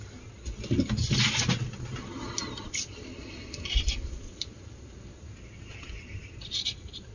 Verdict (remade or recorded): recorded